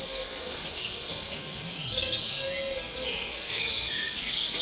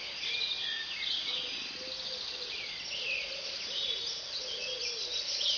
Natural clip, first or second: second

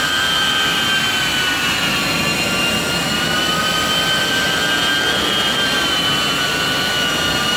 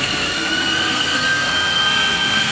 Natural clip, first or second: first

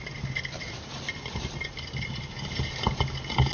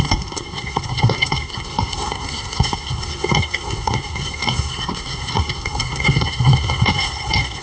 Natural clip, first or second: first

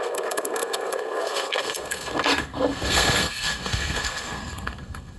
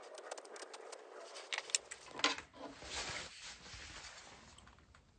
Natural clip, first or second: second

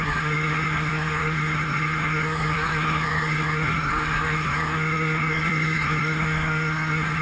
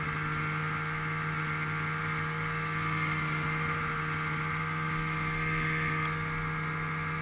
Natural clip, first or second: second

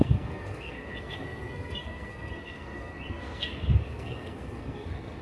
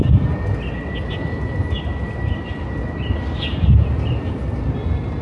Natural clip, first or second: second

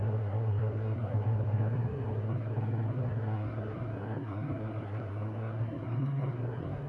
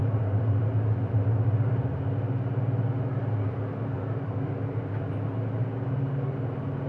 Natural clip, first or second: second